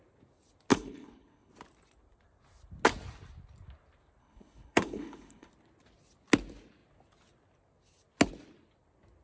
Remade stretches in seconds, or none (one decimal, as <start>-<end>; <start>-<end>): 0.7-1.5; 4.2-5.5

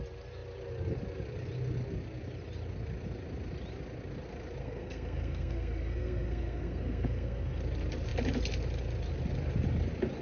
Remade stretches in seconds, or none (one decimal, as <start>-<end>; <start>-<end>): 4.6-7.6

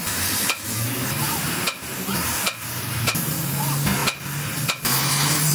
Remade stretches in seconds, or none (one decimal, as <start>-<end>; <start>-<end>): 0.0-3.3

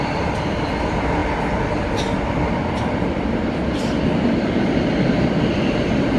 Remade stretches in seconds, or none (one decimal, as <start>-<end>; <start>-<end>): none

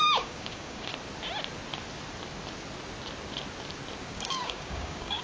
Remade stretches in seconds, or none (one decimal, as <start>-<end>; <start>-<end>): 0.0-0.9; 4.0-5.2

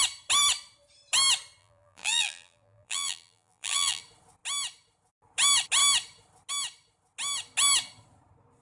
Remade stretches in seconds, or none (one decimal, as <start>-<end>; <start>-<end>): 1.6-4.0

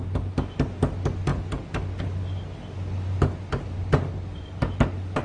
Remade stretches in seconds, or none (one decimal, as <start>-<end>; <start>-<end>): none

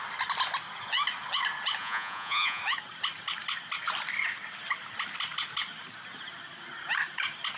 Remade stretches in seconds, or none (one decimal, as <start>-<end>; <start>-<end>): 1.8-2.6